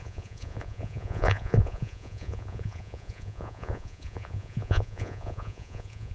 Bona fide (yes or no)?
no